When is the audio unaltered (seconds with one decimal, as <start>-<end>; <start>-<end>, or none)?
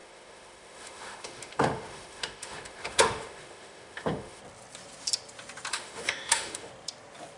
4.4-5.7; 6.7-7.4